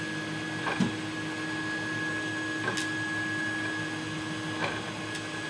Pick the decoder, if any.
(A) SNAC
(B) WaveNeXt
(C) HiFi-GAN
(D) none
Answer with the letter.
D